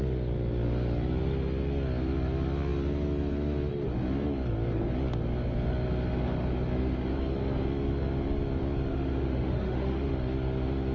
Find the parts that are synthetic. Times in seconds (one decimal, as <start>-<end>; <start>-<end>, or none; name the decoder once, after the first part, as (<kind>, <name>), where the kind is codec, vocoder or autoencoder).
8.9-10.1 (autoencoder, DAC-VAE)